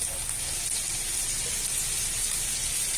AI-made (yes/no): no